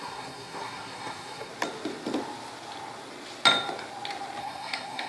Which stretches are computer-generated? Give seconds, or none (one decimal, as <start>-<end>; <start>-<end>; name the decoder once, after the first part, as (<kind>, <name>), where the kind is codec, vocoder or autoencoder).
0.0-1.5 (codec, SNAC); 4.4-5.1